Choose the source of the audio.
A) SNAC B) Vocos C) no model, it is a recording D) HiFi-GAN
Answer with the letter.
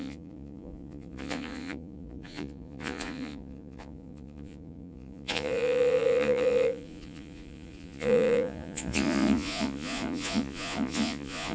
B